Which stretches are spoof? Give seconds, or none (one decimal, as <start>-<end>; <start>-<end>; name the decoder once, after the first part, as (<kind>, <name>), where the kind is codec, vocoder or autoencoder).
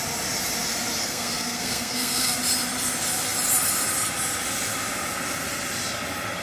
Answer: 1.0-2.4 (codec, SNAC)